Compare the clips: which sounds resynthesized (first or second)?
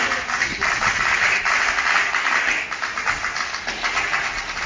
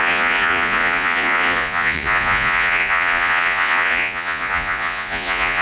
second